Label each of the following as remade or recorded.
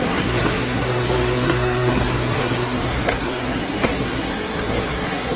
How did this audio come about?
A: remade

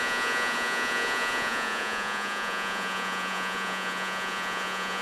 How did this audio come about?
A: remade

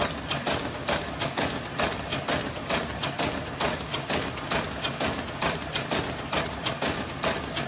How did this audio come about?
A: recorded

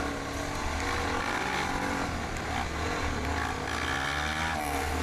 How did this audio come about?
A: recorded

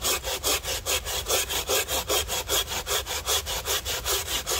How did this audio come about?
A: recorded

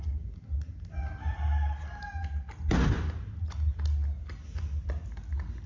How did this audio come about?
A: recorded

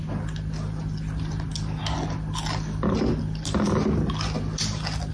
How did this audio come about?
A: recorded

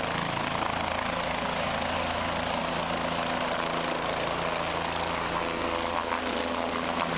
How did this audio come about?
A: recorded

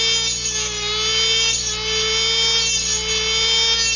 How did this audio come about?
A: recorded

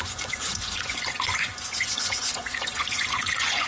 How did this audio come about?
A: remade